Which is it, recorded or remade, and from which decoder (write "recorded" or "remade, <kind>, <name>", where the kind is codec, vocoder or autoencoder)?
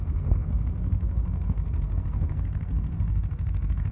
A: remade, codec, SNAC